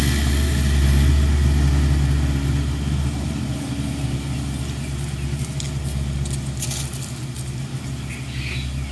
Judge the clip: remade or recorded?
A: recorded